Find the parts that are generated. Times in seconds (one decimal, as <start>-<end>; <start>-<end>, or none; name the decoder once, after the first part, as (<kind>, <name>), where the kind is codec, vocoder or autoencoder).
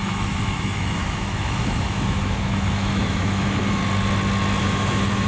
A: 0.0-3.8 (autoencoder, DAC-VAE); 4.6-5.3